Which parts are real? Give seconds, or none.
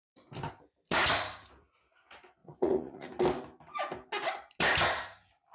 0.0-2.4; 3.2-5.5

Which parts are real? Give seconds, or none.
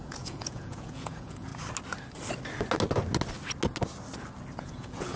1.5-4.6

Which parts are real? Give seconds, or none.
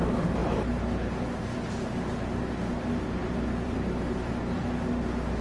0.0-3.2; 4.3-5.4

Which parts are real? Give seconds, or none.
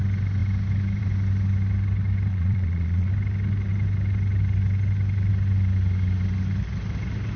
0.0-2.3; 3.1-7.4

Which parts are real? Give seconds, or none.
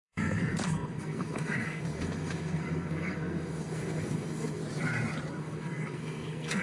4.6-5.3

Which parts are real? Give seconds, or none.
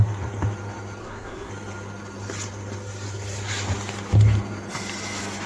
0.0-1.0; 1.5-5.5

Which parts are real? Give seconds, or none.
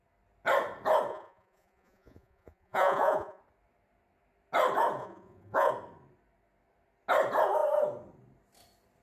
0.0-1.1; 3.4-5.0; 5.7-9.0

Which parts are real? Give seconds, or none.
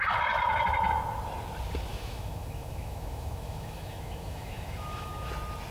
0.0-1.9; 5.3-5.7